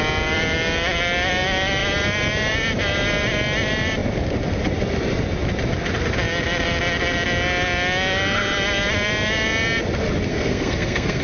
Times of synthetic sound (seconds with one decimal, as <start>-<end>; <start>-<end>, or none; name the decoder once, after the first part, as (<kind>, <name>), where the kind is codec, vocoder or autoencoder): 10.3-11.2 (codec, SNAC)